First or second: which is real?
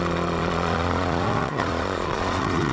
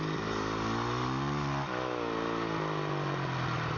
second